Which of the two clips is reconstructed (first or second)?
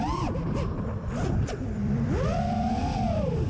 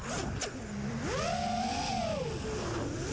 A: first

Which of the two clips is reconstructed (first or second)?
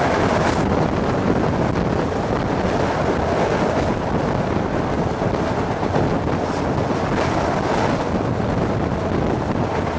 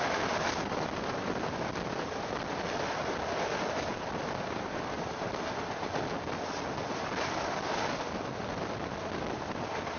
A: second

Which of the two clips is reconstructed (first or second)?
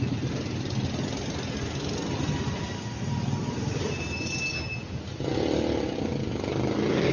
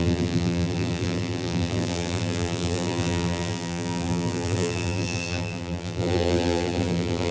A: second